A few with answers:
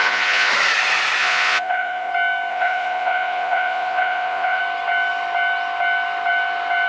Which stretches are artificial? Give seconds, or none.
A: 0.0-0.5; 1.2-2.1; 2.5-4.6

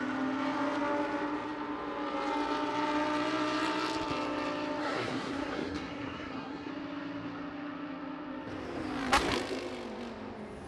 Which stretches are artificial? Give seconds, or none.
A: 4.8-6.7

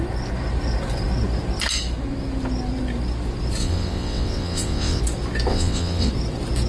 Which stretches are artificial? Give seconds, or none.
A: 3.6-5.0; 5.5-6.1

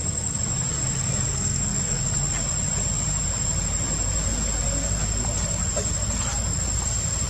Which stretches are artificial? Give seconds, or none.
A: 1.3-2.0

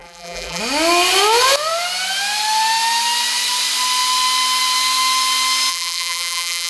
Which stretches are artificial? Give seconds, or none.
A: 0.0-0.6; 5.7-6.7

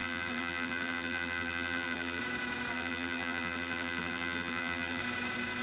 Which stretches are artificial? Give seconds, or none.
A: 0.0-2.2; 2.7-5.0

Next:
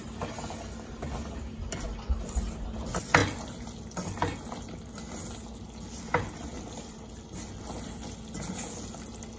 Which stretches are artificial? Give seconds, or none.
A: none